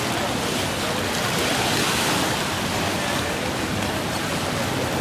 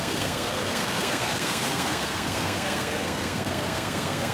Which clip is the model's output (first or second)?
second